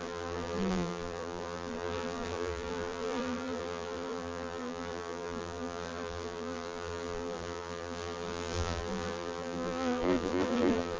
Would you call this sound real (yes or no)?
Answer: no